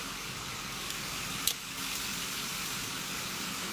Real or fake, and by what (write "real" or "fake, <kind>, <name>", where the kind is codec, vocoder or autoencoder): fake, codec, DAC